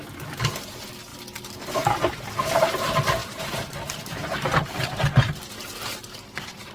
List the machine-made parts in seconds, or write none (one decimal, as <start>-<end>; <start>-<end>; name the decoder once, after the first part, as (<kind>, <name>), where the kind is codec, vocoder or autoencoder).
3.2-6.7 (vocoder, BigVGAN v2)